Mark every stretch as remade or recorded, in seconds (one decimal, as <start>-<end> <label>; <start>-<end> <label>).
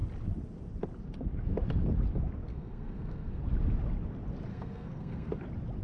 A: 0.0-2.5 recorded; 2.5-3.4 remade; 3.4-4.5 recorded; 4.5-5.3 remade; 5.3-5.8 recorded